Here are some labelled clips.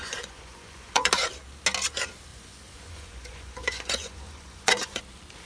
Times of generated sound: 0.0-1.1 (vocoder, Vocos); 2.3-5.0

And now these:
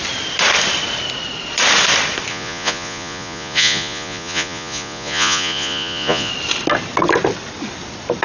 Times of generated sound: 2.3-6.3 (vocoder, Vocos)

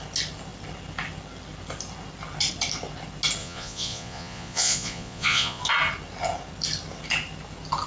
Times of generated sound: 3.4-5.6 (vocoder, Vocos)

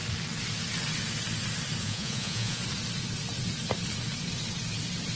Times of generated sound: 1.8-2.6 (vocoder, Vocos)

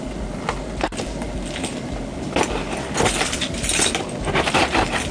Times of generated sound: none

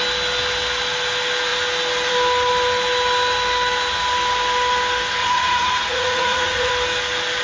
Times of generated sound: 5.2-6.7 (vocoder, Vocos)

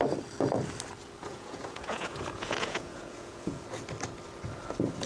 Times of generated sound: 1.2-3.6 (vocoder, Vocos)

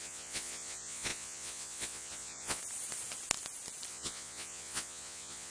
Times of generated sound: 0.0-2.6 (vocoder, Vocos); 3.9-5.5